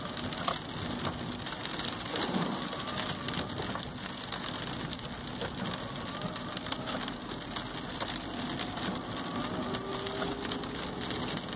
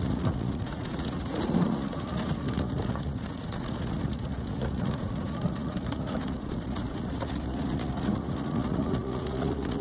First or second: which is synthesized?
second